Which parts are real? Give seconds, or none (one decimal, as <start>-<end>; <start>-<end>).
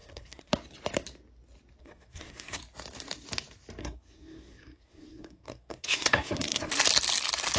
0.5-1.8; 2.6-3.8; 6.7-7.6